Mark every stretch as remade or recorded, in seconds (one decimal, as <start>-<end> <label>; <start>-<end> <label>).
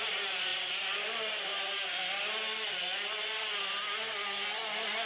0.0-5.1 recorded